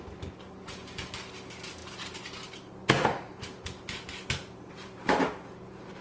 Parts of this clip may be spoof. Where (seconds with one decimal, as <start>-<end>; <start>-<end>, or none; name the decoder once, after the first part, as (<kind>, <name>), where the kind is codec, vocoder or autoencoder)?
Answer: none